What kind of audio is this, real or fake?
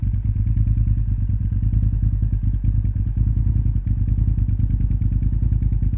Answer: real